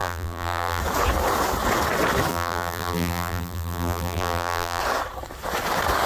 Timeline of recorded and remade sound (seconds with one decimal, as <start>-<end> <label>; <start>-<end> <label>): 0.0-0.8 remade; 0.8-2.3 recorded; 2.3-4.8 remade; 4.8-6.1 recorded